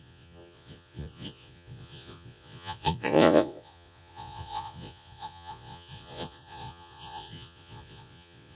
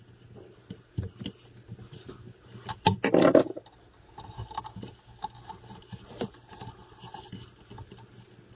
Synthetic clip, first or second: first